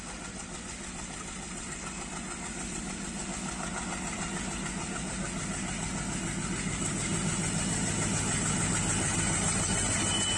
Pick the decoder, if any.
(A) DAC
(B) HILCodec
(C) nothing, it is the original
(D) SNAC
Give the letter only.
C